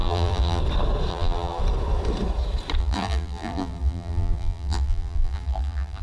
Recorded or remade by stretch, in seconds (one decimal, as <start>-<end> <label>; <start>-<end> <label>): 0.0-0.6 remade; 0.6-1.1 recorded; 1.1-1.6 remade; 1.6-2.8 recorded; 2.8-6.0 remade